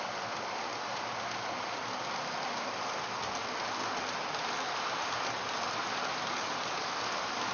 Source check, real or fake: real